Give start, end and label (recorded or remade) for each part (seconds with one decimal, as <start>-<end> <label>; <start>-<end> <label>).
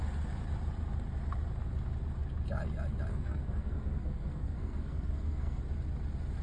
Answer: 0.0-3.1 recorded; 3.1-5.6 remade; 5.6-6.4 recorded